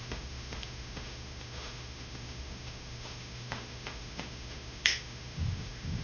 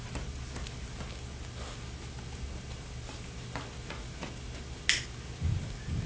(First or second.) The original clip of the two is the second